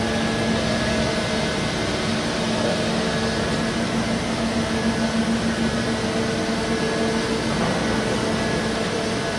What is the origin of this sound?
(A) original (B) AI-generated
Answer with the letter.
A